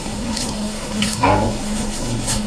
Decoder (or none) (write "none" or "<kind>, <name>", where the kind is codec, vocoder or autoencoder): codec, SNAC